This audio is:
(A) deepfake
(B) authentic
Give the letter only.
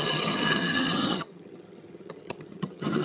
A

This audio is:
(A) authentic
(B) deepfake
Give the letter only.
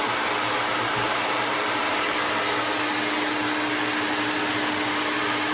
A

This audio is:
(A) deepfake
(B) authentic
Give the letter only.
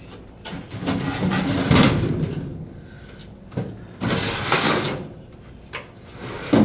B